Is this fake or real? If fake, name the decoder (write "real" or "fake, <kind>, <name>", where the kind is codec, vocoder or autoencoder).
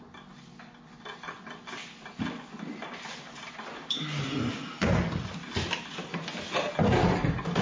real